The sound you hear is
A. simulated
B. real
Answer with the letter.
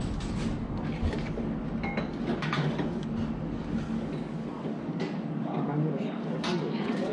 A